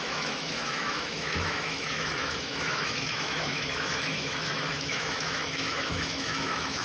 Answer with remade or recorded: remade